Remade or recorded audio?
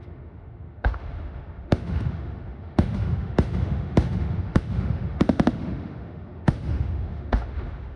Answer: remade